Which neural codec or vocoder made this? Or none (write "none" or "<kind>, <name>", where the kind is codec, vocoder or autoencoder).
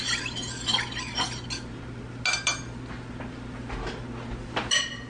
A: none